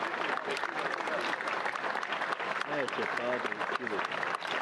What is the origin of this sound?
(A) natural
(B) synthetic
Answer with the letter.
A